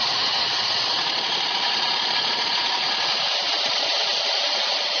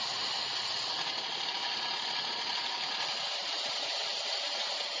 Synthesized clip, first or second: first